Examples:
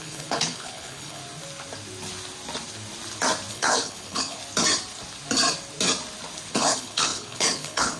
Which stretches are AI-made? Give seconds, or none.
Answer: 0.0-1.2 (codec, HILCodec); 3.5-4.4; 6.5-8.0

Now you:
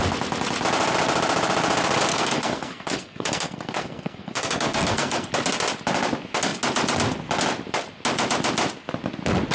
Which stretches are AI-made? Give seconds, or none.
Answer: 2.1-5.3 (codec, SNAC)

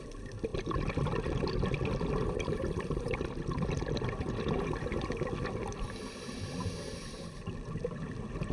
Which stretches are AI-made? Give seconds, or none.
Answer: none

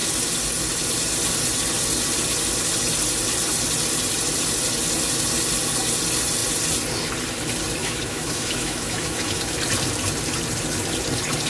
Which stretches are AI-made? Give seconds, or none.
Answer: 7.8-9.4 (autoencoder, DAC-VAE)